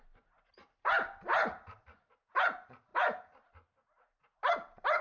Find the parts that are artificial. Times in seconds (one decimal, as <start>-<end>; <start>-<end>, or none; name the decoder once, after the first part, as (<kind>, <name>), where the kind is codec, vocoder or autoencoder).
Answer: none